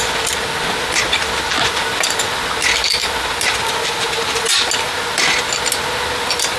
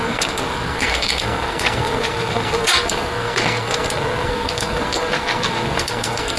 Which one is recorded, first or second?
first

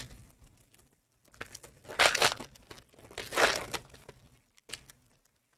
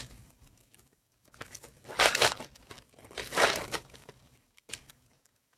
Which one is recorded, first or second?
first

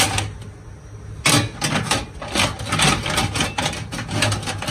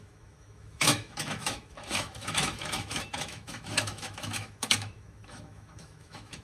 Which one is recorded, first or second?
first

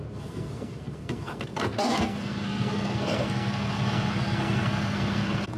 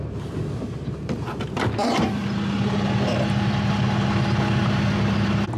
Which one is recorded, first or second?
second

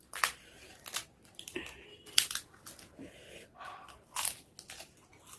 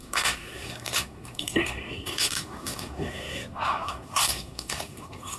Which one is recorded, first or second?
first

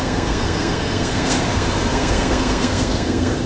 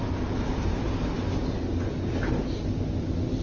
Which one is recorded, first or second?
second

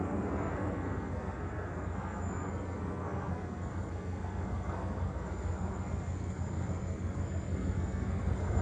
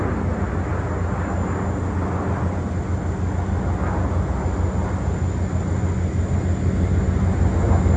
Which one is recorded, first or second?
second